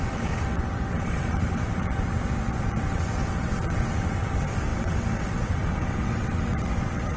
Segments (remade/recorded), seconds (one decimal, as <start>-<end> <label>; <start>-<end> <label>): 0.0-7.2 remade